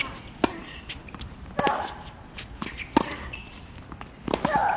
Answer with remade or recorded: recorded